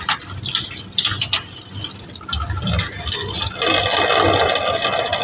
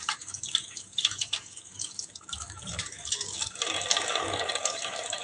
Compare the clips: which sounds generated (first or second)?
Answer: second